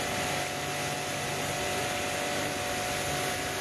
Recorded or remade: recorded